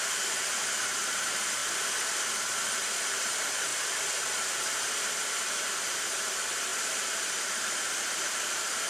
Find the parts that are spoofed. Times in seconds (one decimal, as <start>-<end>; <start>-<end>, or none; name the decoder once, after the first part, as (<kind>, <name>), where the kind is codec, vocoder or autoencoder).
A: 0.0-1.6 (vocoder, BigVGAN v2); 2.1-3.7; 4.8-8.9

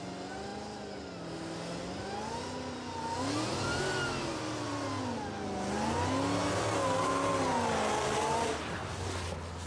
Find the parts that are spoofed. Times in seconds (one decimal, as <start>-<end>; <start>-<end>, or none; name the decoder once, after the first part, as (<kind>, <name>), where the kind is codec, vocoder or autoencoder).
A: none

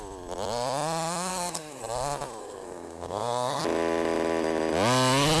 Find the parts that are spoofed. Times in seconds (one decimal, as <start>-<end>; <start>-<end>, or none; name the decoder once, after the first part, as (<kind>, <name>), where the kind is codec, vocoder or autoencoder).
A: 1.3-1.8 (codec, SNAC); 2.4-3.6

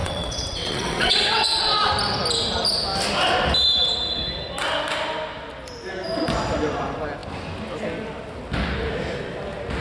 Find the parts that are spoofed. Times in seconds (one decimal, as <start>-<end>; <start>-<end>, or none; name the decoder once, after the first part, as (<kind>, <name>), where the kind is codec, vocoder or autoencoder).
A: 0.0-1.9 (vocoder, WaveNeXt)